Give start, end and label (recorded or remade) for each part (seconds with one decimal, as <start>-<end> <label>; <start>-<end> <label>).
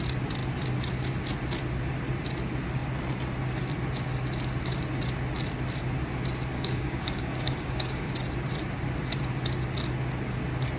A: 0.0-6.5 recorded; 6.5-8.1 remade; 8.1-10.8 recorded